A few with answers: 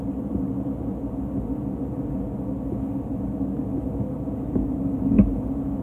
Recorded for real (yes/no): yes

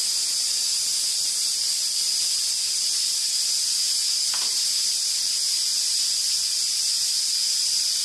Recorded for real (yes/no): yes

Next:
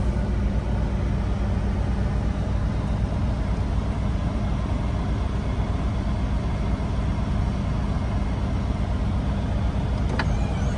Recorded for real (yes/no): yes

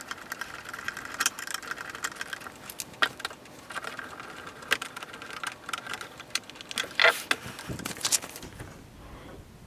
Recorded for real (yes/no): yes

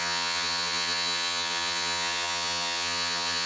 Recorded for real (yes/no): no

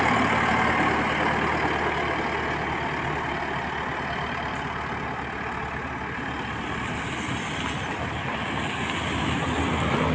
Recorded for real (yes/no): yes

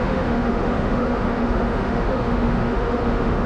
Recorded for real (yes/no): no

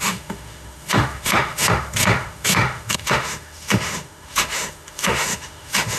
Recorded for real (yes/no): no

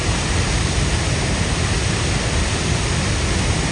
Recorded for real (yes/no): yes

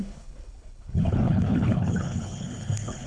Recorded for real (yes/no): no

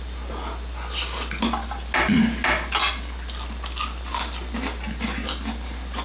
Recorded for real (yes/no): yes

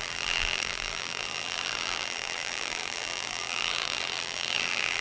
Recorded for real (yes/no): no